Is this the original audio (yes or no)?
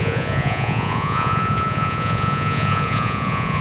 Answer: no